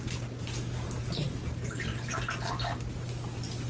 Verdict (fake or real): real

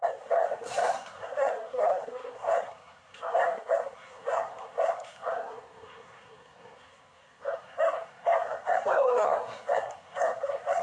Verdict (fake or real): fake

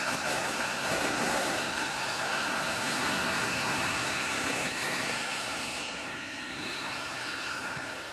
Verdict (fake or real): fake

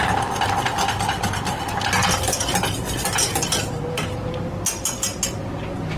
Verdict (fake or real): real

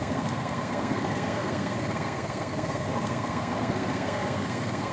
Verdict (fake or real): fake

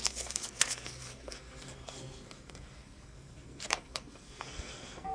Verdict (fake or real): fake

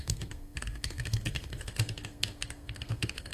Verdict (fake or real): fake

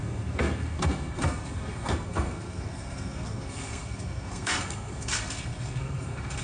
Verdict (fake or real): fake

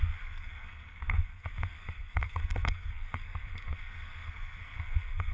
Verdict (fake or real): fake